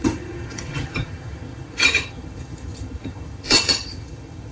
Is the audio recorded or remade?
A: remade